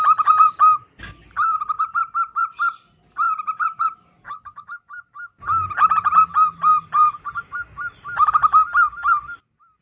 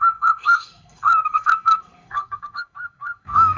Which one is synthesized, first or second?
second